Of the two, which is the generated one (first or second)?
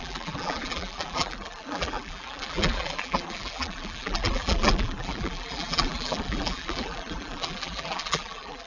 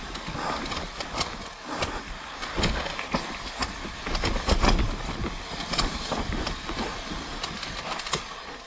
first